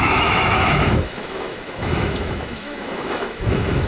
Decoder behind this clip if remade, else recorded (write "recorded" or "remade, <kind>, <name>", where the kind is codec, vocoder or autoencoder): remade, autoencoder, DAC-VAE